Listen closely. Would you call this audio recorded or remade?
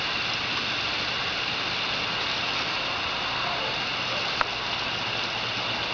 recorded